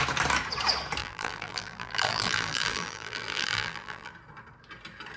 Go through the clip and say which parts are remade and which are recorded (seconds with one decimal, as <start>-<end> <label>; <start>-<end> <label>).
0.0-1.0 recorded; 1.0-4.1 remade; 4.1-5.2 recorded